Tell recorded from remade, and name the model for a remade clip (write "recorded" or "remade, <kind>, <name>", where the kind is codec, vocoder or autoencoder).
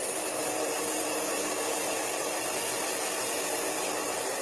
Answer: recorded